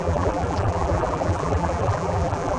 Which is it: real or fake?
fake